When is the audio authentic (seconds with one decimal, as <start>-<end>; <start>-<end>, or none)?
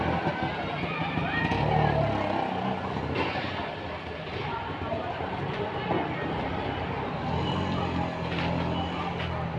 0.0-9.6